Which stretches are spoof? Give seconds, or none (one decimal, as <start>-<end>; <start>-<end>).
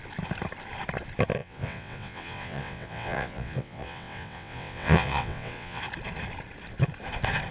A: 1.4-5.8